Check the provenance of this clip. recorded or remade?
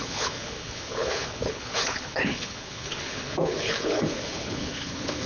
remade